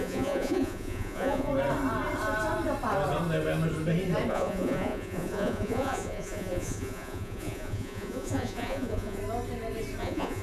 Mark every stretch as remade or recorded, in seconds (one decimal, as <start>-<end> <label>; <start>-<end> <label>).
0.0-1.5 remade; 1.5-4.3 recorded; 4.3-9.2 remade; 9.2-10.0 recorded; 10.0-10.4 remade